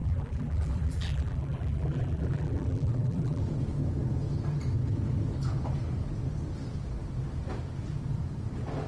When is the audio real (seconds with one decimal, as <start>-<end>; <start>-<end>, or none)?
3.4-8.9